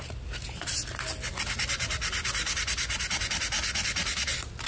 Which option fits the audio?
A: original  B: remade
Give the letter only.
A